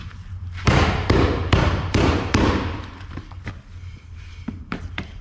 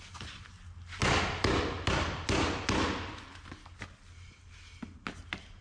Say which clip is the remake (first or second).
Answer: first